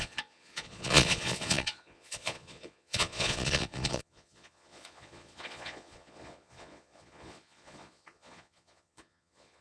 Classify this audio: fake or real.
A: fake